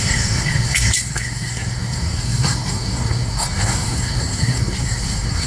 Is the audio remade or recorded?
remade